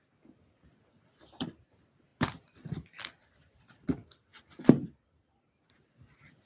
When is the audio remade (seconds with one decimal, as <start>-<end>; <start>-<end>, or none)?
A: 0.0-4.3; 5.7-6.5